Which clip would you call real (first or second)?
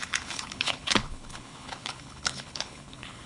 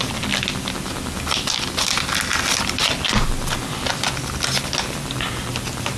second